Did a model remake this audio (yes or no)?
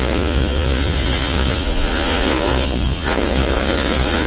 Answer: yes